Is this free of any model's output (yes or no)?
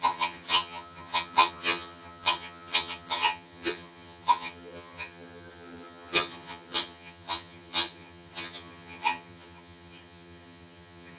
no